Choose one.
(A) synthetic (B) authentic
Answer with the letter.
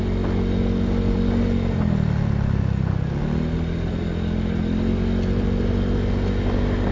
B